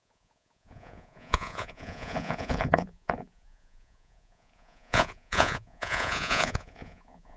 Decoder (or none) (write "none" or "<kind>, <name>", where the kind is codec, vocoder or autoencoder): vocoder, Vocos